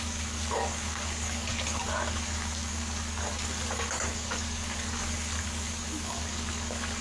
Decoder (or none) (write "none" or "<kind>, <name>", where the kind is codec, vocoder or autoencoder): codec, DAC